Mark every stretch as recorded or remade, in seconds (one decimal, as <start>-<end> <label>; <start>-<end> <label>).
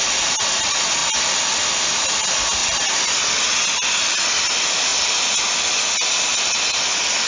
0.0-7.3 recorded